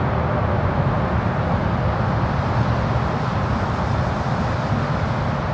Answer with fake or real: real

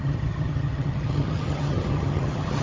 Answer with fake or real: fake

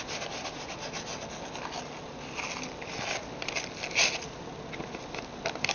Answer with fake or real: real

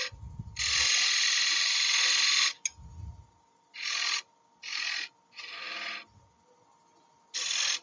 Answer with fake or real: real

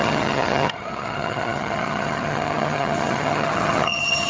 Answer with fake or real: fake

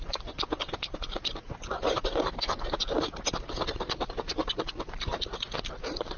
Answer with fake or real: real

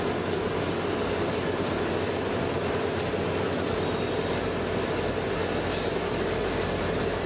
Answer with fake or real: real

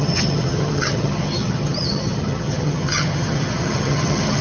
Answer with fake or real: fake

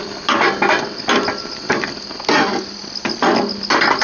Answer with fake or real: real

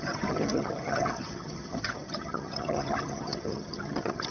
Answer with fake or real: fake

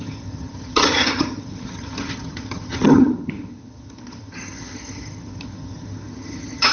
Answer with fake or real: fake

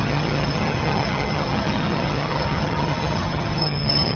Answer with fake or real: fake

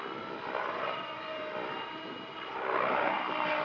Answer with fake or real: real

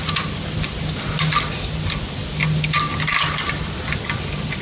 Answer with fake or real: real